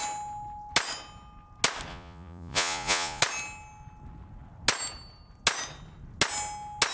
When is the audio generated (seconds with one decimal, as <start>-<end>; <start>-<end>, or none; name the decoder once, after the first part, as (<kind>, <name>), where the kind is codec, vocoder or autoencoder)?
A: 1.9-3.2 (vocoder, Vocos)